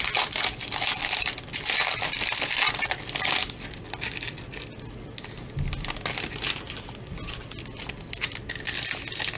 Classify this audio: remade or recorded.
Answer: recorded